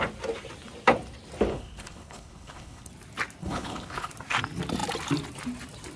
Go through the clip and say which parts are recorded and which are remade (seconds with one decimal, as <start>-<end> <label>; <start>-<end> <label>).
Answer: 0.0-1.5 recorded; 1.5-2.9 remade; 2.9-3.4 recorded; 3.4-4.1 remade; 4.1-6.0 recorded